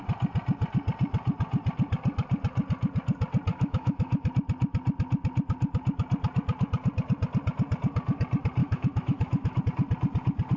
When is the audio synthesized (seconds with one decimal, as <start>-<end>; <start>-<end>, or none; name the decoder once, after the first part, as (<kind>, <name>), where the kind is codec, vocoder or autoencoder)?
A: 3.5-4.3 (autoencoder, DAC-VAE); 8.6-9.6